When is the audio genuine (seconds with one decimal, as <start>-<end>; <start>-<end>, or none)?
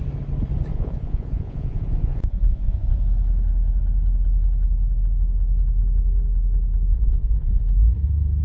0.0-0.7; 3.0-6.9; 7.6-8.4